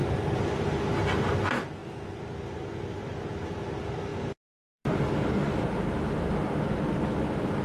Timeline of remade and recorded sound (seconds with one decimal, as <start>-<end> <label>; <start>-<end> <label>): 0.0-4.1 recorded; 4.1-5.0 remade; 5.0-7.6 recorded